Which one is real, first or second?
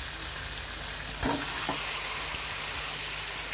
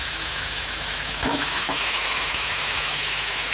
first